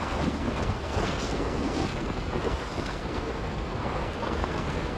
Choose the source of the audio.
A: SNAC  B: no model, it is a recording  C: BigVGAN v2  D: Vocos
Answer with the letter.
A